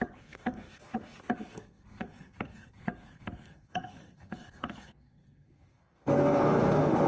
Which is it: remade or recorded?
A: remade